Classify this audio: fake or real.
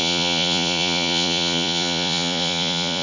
fake